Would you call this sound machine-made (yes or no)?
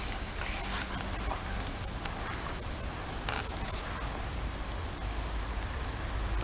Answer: no